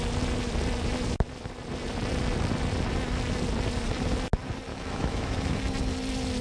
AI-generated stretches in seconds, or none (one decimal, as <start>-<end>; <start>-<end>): 4.7-5.6